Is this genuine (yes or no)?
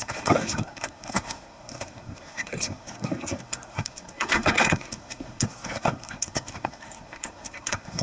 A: no